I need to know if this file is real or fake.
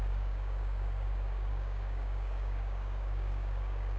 fake